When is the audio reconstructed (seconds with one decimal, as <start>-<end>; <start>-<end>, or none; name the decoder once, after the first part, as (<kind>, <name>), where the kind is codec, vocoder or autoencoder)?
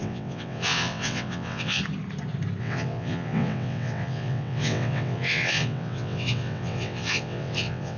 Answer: 0.0-1.8 (vocoder, WaveNeXt); 2.6-8.0